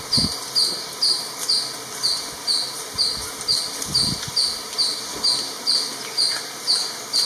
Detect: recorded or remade recorded